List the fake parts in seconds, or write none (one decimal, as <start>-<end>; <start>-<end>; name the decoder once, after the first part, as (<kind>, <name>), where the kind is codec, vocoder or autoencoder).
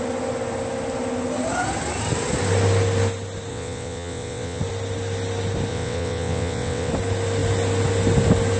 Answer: 3.5-4.6 (vocoder, WaveNeXt); 5.7-6.9